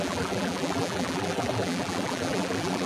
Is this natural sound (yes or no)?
no